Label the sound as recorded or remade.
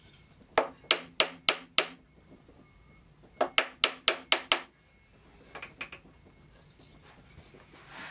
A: recorded